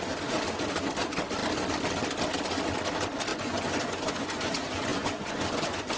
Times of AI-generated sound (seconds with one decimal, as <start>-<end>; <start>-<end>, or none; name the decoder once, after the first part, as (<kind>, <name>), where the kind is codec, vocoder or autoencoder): 3.3-4.5 (vocoder, Vocos); 4.9-6.0